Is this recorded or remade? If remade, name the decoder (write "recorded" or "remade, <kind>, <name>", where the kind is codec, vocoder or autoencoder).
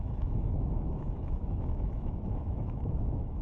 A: remade, autoencoder, DAC-VAE